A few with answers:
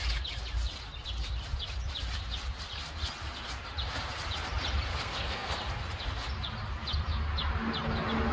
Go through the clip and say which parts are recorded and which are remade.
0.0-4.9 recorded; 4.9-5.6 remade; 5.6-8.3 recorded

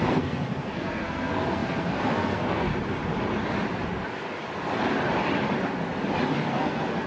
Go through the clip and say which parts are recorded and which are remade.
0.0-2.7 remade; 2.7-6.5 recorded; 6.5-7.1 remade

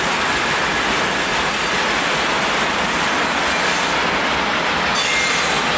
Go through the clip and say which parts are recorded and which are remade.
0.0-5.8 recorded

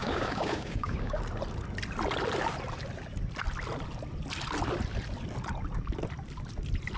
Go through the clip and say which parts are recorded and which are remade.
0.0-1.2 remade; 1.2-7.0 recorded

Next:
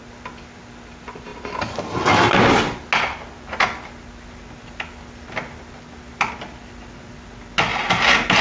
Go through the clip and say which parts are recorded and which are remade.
0.0-8.4 recorded